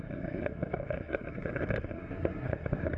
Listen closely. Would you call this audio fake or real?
fake